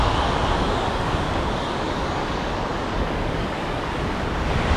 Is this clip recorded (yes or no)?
no